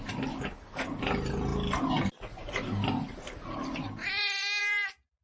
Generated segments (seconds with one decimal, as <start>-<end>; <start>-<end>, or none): none